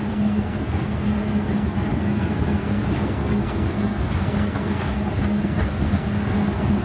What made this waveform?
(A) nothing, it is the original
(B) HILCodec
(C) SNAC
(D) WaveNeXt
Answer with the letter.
C